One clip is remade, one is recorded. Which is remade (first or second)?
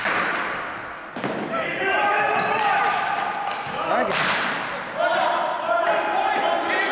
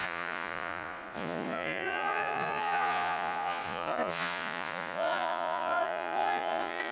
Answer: second